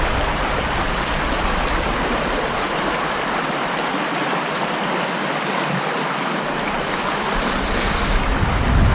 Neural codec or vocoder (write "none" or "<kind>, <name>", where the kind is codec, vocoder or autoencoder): none